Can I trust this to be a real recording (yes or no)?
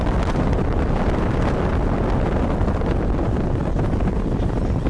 yes